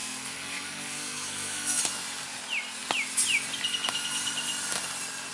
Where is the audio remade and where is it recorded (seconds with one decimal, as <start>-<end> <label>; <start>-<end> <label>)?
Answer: 0.0-1.8 remade; 1.8-5.3 recorded